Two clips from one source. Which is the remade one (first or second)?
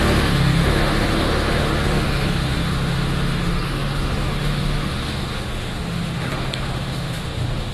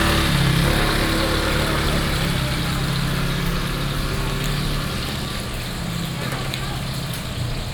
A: first